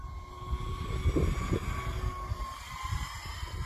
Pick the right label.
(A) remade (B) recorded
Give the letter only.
B